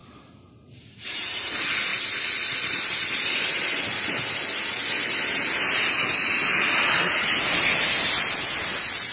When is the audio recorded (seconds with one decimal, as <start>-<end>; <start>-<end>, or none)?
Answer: 1.5-9.1

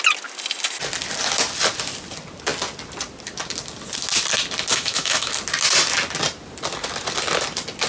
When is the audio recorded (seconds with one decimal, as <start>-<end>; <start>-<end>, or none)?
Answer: 0.0-4.7; 5.3-7.9

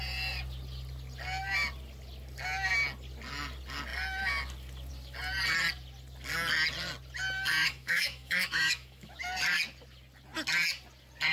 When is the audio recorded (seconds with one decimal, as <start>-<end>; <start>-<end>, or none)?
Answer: 0.0-7.6; 9.2-11.3

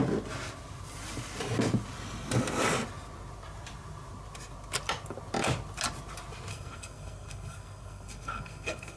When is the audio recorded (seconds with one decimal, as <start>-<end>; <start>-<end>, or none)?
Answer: 0.0-6.5